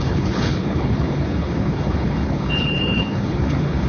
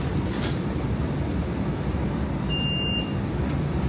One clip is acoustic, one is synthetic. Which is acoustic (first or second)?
second